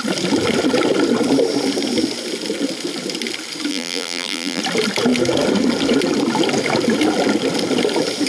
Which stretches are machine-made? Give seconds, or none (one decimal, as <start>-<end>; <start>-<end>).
3.7-4.6